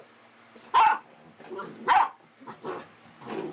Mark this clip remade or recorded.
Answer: recorded